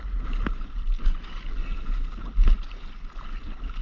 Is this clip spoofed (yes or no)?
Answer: no